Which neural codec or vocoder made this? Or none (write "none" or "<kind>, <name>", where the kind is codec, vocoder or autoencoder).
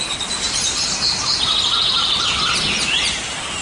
none